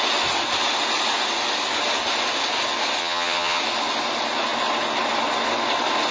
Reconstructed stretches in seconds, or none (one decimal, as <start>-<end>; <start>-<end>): 3.0-3.6